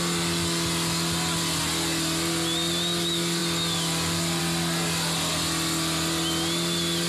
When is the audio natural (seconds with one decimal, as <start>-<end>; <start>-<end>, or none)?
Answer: 0.0-7.1